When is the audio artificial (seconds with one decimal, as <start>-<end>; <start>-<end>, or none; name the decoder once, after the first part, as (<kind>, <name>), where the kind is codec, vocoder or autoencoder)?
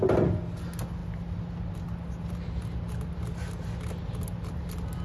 none